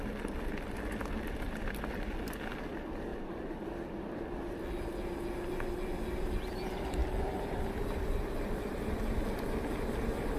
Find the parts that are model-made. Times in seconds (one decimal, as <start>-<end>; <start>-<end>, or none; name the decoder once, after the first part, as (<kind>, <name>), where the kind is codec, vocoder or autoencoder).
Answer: 3.1-3.8 (vocoder, BigVGAN v2)